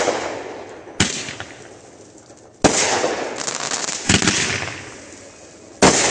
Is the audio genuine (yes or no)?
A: yes